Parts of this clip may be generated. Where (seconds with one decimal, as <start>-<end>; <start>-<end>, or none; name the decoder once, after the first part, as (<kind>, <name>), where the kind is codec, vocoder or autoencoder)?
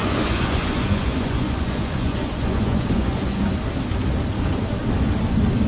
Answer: 0.0-3.4 (vocoder, Vocos)